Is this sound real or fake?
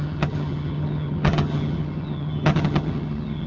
fake